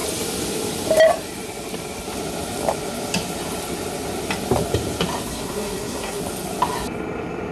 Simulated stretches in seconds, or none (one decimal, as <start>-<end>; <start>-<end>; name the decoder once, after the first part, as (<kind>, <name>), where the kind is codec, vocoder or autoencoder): 5.3-6.2 (codec, SNAC)